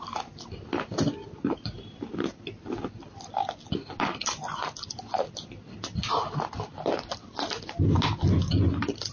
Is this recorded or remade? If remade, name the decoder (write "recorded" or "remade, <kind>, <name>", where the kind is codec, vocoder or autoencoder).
recorded